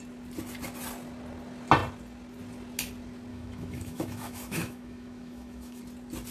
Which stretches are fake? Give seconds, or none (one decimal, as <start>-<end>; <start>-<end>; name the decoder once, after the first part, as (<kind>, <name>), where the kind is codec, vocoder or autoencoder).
3.3-5.8 (autoencoder, DAC-VAE)